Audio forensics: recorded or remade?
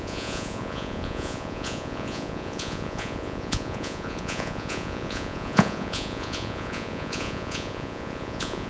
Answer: remade